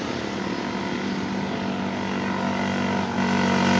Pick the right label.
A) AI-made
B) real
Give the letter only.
B